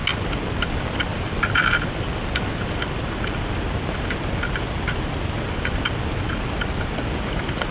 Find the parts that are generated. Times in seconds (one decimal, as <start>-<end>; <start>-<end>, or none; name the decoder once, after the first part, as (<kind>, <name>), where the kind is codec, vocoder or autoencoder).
none